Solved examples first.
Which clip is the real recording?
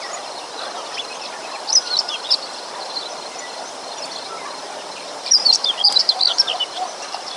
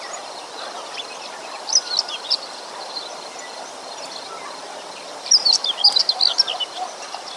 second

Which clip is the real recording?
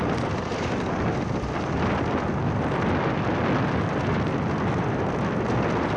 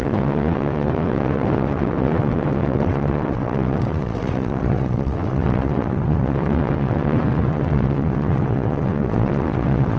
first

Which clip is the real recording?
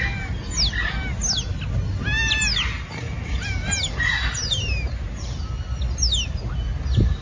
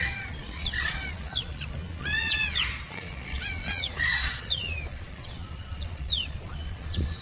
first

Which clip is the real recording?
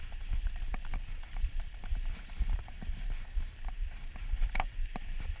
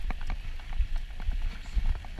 second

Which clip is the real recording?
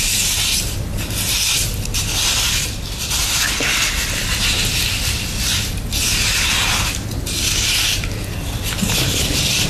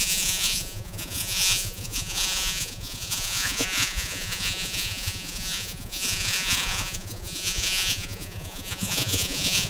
first